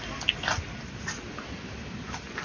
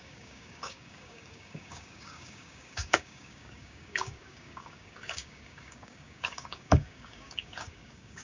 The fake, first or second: second